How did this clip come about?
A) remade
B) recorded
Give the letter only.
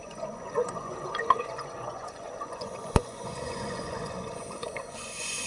A